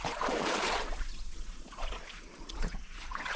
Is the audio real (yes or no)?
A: no